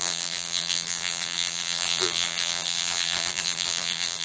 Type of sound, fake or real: fake